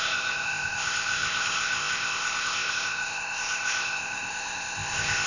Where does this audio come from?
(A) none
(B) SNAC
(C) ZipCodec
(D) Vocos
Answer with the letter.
C